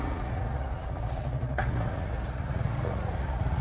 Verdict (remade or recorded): remade